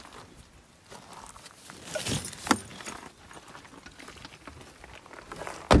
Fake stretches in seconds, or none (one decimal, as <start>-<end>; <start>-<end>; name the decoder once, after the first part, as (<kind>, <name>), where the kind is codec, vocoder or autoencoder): none